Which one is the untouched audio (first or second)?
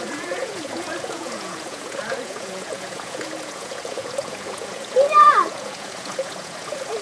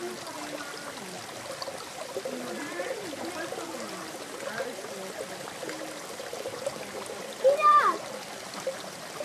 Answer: second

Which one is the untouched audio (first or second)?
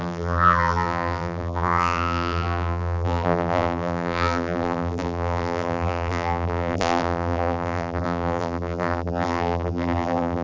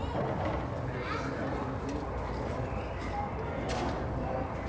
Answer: second